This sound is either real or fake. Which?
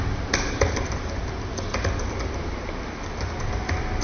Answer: real